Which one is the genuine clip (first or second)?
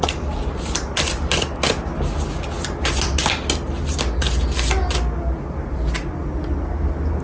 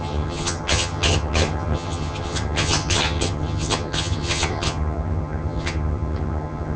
first